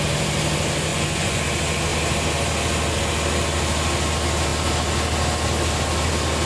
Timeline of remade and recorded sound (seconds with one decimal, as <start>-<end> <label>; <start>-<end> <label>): 0.0-0.9 recorded; 0.9-1.4 remade; 1.4-6.5 recorded